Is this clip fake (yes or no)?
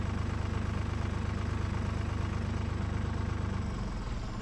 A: no